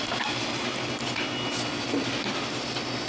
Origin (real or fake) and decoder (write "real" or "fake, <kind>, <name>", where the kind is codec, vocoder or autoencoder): real